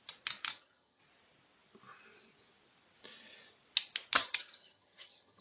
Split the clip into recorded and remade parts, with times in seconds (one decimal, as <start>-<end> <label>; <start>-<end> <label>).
0.0-0.5 recorded; 0.5-1.0 remade; 1.0-4.2 recorded; 4.2-5.4 remade